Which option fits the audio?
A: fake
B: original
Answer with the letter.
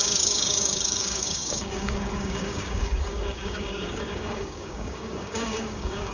A